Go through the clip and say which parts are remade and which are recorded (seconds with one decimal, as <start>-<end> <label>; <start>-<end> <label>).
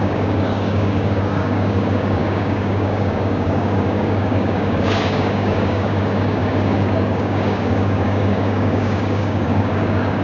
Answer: 0.0-10.2 remade